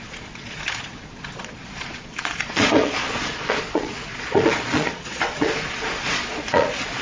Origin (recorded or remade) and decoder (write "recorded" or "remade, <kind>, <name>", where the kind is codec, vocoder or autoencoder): remade, vocoder, Vocos